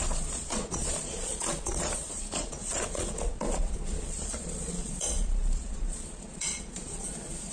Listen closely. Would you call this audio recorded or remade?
remade